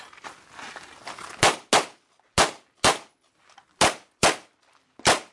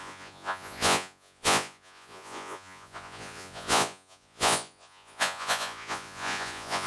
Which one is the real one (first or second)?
first